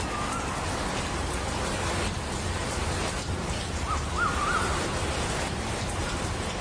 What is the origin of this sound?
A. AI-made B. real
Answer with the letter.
B